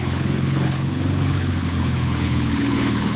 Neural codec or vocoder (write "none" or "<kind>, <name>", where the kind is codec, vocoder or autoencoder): codec, HILCodec